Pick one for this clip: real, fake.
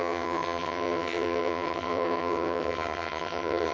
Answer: fake